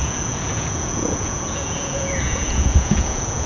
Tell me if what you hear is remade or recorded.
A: remade